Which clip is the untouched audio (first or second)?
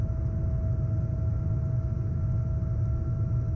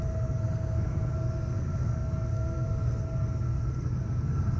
first